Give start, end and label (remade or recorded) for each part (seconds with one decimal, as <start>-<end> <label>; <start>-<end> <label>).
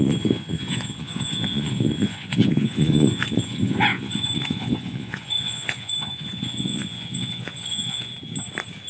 0.0-8.1 remade; 8.1-8.9 recorded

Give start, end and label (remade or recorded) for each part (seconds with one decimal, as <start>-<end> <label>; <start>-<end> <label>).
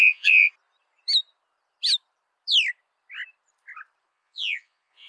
0.0-0.5 remade; 0.5-4.1 recorded; 4.1-5.1 remade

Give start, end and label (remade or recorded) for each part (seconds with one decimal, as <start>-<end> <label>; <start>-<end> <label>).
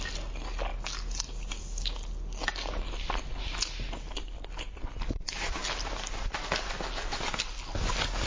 0.0-8.3 recorded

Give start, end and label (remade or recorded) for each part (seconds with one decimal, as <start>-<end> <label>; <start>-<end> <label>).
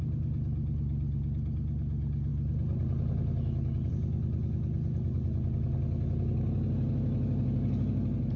0.0-8.4 recorded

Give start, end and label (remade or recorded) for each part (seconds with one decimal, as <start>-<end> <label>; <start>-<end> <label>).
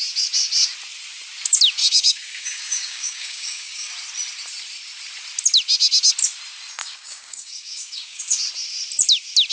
0.0-1.8 recorded; 1.8-3.9 remade; 3.9-6.8 recorded; 6.8-8.2 remade; 8.2-9.5 recorded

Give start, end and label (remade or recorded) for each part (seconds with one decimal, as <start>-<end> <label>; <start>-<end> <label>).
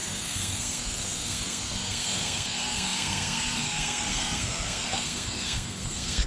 0.0-6.3 remade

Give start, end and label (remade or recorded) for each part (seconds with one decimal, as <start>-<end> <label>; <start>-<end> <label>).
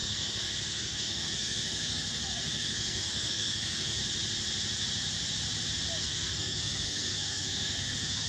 0.0-4.0 remade; 4.0-6.0 recorded; 6.0-8.3 remade